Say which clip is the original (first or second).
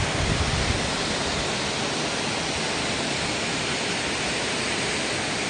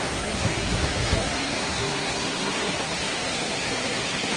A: first